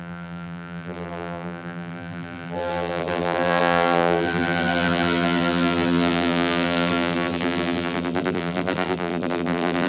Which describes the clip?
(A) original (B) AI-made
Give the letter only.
B